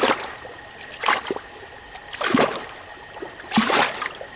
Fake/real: real